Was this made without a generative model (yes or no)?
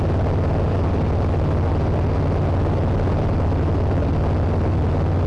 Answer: yes